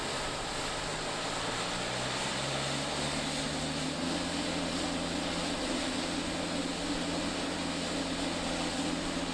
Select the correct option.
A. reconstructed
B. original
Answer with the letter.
B